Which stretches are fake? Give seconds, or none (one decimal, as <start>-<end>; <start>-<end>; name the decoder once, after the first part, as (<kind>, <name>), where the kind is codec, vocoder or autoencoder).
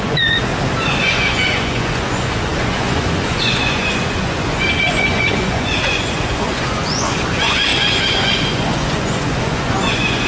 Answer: 0.0-0.5 (vocoder, Vocos); 1.0-10.3